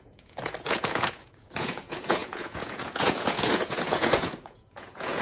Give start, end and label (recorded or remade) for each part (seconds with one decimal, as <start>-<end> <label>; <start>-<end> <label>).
0.0-5.2 remade